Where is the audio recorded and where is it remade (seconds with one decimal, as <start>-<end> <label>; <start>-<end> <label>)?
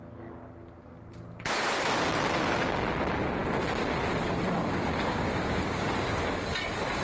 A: 0.0-7.0 recorded